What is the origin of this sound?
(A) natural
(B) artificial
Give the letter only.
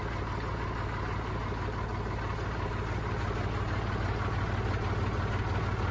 A